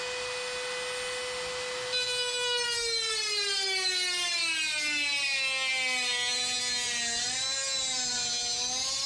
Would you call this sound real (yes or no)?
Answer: yes